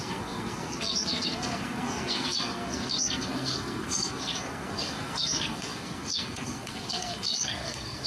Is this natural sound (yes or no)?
no